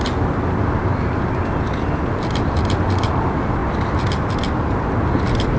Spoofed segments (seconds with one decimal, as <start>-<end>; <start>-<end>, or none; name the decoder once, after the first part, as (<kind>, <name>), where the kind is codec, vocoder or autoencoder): none

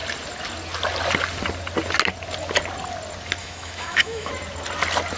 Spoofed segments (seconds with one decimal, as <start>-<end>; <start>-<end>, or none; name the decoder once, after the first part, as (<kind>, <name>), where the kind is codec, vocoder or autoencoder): 3.4-4.3 (autoencoder, DAC-VAE)

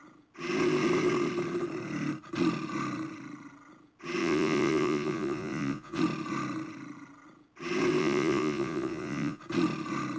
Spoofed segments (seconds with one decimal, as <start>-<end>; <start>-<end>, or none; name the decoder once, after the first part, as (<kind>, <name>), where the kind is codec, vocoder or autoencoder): 4.2-6.0 (vocoder, Vocos); 8.0-9.4

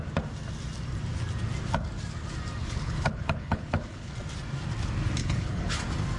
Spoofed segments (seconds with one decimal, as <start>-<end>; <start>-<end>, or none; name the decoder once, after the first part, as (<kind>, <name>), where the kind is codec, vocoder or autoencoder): 2.6-4.1 (codec, HILCodec); 5.2-5.8

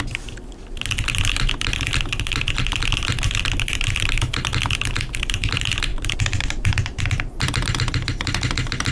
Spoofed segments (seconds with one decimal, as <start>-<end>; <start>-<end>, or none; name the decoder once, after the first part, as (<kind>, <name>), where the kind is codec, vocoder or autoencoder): 5.9-7.0 (vocoder, BigVGAN v2)